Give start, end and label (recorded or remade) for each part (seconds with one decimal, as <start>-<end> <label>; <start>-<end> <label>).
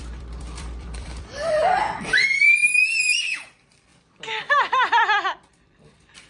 0.0-1.6 remade; 1.6-2.7 recorded; 2.7-3.9 remade; 3.9-5.5 recorded; 5.5-6.3 remade